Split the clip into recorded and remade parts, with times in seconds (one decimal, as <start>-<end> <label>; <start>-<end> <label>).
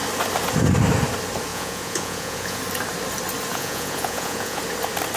0.0-1.5 recorded; 1.5-2.6 remade; 2.6-3.5 recorded; 3.5-4.6 remade; 4.6-5.2 recorded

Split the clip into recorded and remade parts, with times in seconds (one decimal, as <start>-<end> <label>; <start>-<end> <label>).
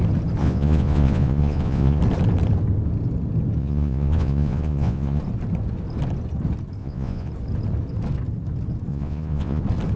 0.0-0.4 recorded; 0.4-2.0 remade; 2.0-3.6 recorded; 3.6-5.2 remade; 5.2-6.8 recorded; 6.8-7.3 remade; 7.3-8.9 recorded; 8.9-9.6 remade; 9.6-10.0 recorded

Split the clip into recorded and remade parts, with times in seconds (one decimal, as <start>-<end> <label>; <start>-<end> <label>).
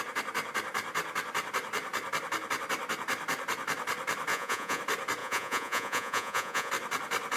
0.0-4.3 recorded; 4.3-4.8 remade; 4.8-5.2 recorded; 5.2-6.7 remade; 6.7-7.4 recorded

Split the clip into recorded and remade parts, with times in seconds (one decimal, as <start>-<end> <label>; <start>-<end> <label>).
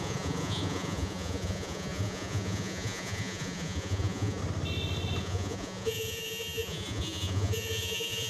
0.0-4.4 remade; 4.4-5.2 recorded; 5.2-8.3 remade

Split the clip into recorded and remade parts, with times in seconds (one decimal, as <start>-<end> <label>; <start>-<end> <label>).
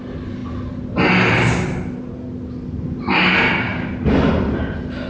0.0-5.1 recorded